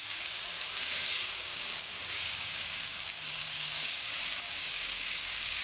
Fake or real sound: fake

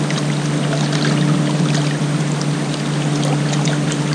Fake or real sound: real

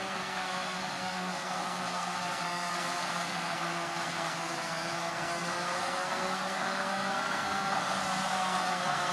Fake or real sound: fake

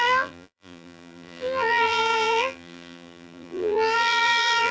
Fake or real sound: fake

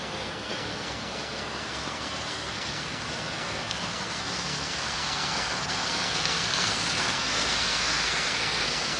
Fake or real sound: fake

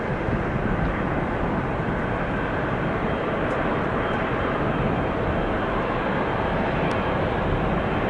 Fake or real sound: real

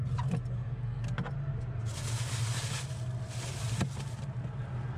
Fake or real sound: real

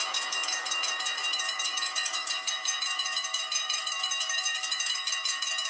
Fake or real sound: fake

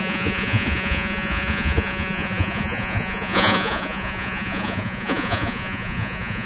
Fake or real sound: fake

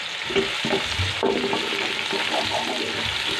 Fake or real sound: real